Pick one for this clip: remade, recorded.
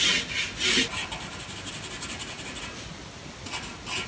recorded